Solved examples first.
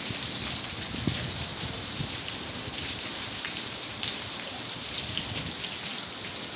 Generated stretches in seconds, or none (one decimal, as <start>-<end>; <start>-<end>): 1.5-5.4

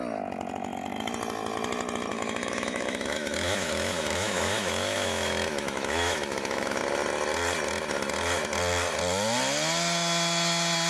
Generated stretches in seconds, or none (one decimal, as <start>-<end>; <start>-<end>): 2.1-6.8

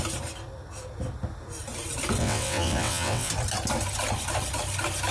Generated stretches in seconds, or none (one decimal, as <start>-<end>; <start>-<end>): 2.2-3.3